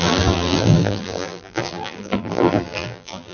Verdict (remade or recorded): remade